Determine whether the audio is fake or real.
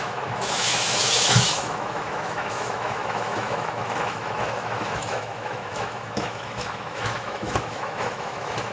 fake